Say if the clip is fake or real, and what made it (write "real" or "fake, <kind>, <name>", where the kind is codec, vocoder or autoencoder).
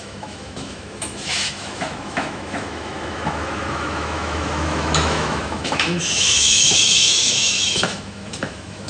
fake, autoencoder, DAC-VAE